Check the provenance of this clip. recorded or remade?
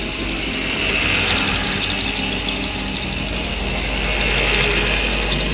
recorded